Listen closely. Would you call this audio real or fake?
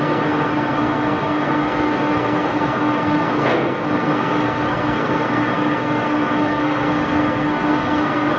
fake